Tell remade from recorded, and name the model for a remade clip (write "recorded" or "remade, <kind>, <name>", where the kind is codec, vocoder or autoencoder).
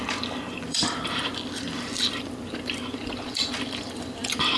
remade, vocoder, BigVGAN v2